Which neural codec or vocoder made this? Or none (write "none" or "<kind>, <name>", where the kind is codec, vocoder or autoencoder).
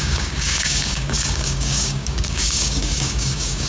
codec, DAC